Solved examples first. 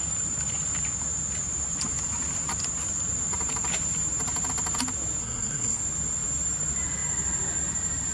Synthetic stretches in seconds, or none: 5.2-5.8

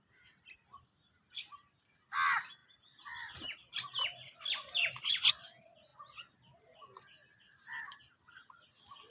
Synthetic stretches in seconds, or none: none

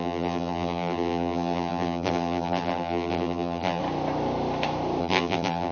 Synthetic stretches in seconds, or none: 0.0-3.8; 5.0-5.7